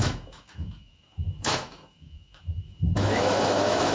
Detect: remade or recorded remade